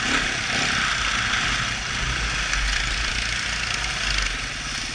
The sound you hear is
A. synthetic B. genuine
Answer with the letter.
B